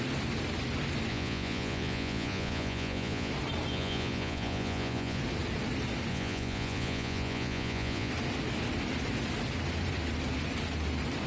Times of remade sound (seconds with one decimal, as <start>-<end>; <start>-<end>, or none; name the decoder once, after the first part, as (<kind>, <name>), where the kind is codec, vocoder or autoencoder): 1.1-3.3 (vocoder, Vocos); 3.7-5.2; 6.1-8.1